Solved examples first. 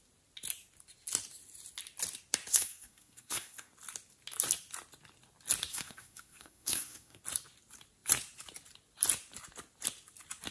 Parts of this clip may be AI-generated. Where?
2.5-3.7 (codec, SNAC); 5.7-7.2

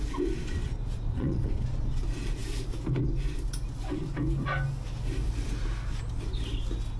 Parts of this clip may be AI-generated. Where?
1.1-2.0 (vocoder, Vocos)

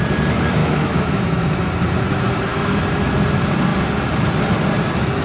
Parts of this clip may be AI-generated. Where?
0.6-1.7 (autoencoder, DAC-VAE)